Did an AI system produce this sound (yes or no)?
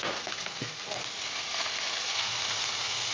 no